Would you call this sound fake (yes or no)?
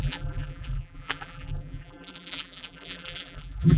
yes